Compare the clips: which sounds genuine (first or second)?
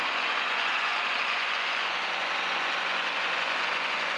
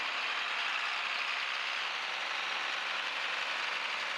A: second